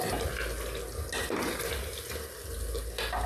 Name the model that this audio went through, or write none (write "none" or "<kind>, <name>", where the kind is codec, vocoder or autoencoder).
none